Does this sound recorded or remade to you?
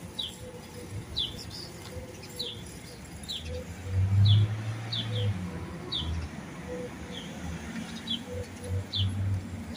recorded